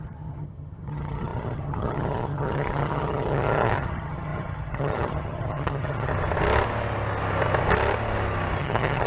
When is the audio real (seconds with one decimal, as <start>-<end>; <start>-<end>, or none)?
6.1-8.6